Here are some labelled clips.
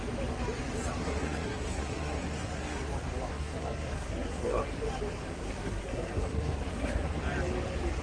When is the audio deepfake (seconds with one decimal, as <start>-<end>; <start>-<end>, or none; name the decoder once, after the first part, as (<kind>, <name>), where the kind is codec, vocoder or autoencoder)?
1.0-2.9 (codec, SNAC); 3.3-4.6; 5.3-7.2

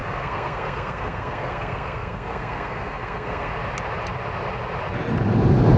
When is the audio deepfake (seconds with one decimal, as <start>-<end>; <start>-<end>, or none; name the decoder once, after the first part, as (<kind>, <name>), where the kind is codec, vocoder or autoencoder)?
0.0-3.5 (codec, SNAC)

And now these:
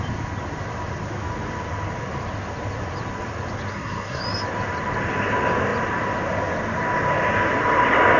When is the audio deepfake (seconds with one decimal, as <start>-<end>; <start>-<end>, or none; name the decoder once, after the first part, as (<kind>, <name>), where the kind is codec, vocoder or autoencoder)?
3.7-4.2 (codec, SNAC)

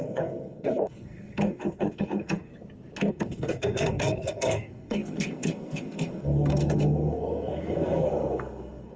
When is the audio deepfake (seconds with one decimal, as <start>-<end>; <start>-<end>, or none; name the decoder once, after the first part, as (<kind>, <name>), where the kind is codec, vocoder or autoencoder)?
0.0-2.5 (codec, SNAC); 3.1-9.0

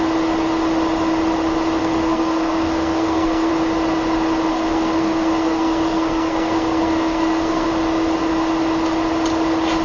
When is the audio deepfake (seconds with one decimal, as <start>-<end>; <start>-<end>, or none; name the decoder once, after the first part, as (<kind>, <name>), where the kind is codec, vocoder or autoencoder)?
1.8-3.5 (codec, SNAC); 4.5-7.7

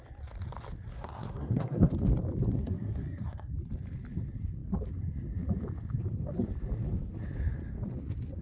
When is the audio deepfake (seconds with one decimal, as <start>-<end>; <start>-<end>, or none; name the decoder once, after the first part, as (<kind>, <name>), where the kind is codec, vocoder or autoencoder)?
0.9-1.9 (codec, SNAC); 2.5-3.5